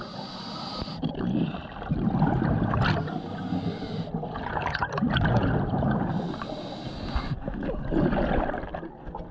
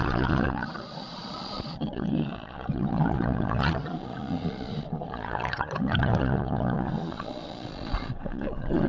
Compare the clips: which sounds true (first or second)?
first